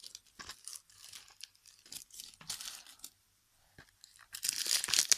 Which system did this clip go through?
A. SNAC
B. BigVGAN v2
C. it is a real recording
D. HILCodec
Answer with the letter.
C